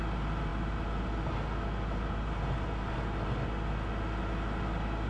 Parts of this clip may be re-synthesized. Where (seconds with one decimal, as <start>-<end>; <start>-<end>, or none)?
none